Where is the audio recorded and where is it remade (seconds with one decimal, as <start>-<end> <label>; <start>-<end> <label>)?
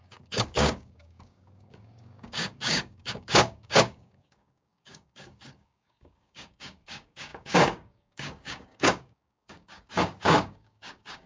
0.0-11.3 remade